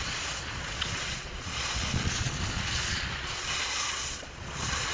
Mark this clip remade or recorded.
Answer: remade